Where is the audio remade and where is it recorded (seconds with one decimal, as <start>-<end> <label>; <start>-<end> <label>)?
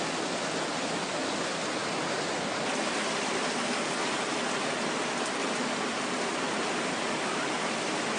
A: 0.0-8.2 recorded